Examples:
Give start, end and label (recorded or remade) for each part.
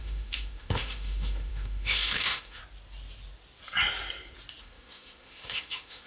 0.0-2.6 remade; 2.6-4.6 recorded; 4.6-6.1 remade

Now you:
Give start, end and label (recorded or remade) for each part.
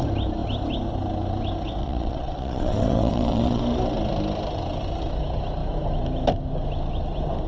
0.0-1.8 recorded; 1.8-3.6 remade; 3.6-7.5 recorded